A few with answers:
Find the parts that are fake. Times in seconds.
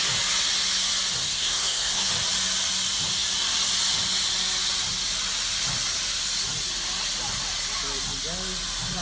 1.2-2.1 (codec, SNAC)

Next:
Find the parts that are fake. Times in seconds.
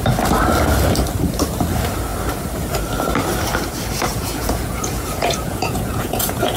4.1-6.6 (vocoder, Vocos)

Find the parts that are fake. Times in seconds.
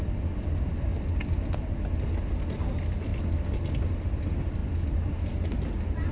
none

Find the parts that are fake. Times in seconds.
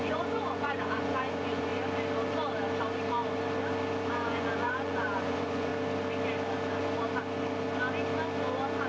0.0-1.7 (vocoder, Vocos); 4.1-5.7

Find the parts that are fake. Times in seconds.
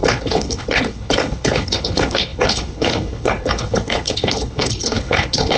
0.0-5.6 (codec, HILCodec)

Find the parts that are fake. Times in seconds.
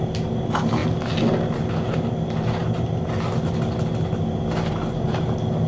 none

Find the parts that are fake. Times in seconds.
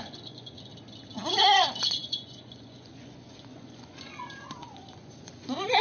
0.0-0.7 (vocoder, Vocos); 1.3-5.8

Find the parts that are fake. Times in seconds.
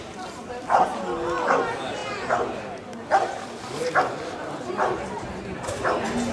none